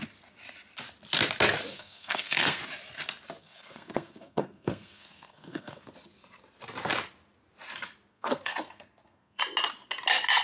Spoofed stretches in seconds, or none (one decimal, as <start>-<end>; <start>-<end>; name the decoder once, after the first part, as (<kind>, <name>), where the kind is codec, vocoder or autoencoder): 1.7-2.6 (codec, SNAC); 3.4-5.9; 8.1-9.4